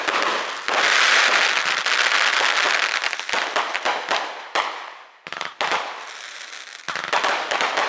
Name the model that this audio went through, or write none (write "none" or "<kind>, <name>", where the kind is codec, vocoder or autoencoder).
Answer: none